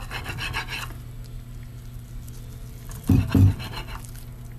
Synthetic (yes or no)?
no